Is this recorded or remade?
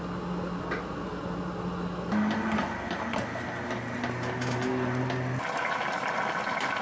recorded